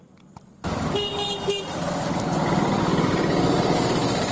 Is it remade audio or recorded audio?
recorded